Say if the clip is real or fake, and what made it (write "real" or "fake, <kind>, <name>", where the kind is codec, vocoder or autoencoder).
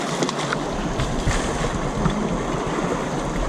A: real